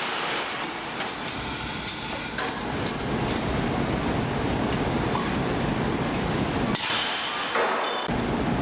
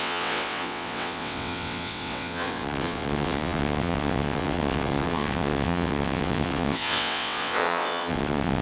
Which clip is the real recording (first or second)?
first